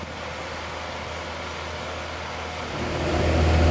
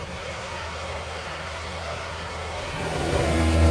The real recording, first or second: first